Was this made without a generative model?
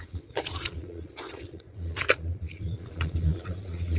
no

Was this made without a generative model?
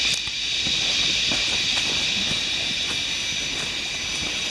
yes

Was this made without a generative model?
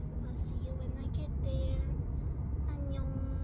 yes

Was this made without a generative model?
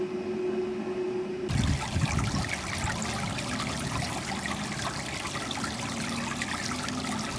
yes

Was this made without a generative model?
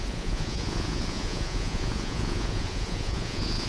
no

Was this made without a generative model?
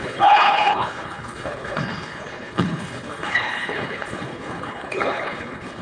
no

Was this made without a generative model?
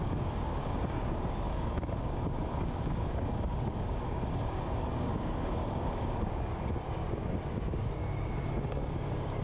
no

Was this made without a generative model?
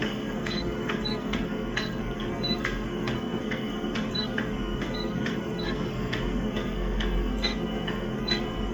no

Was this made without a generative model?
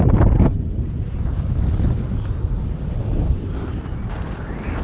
yes